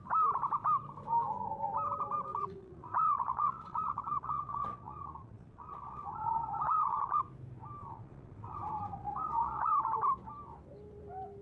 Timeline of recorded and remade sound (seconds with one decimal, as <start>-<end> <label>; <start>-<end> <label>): 0.0-2.3 recorded; 2.3-7.2 remade; 7.2-7.8 recorded; 7.8-9.7 remade; 9.7-11.4 recorded